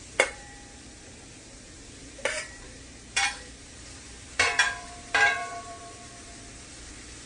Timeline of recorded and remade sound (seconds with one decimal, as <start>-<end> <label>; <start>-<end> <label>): 0.0-6.3 remade; 6.3-7.3 recorded

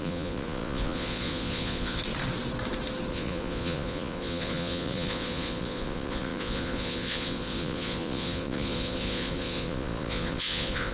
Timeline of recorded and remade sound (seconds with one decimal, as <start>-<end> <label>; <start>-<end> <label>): 0.0-2.0 remade; 2.0-3.1 recorded; 3.1-10.9 remade

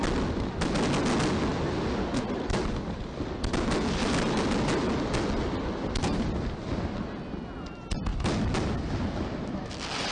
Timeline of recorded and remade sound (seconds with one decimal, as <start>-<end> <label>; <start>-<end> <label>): 0.0-10.1 recorded

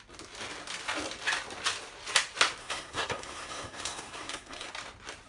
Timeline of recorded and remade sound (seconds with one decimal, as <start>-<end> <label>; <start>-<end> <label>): 0.0-2.6 recorded; 2.6-4.7 remade; 4.7-5.3 recorded

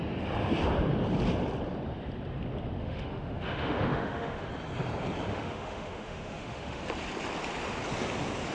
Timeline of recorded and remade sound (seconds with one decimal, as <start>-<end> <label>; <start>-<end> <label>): 0.0-2.8 recorded; 2.8-4.5 remade; 4.5-5.3 recorded; 5.3-6.8 remade; 6.8-8.5 recorded

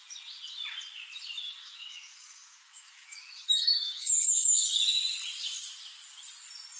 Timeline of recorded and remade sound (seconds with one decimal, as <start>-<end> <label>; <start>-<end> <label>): 0.0-1.6 recorded; 1.6-4.7 remade; 4.7-6.8 recorded